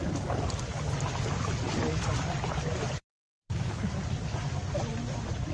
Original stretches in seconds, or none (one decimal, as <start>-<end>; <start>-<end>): 0.0-3.1; 3.9-5.5